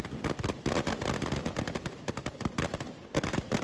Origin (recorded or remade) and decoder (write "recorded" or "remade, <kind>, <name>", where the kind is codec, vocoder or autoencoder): remade, vocoder, BigVGAN v2